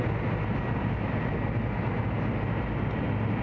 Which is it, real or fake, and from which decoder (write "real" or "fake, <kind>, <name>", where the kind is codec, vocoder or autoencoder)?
real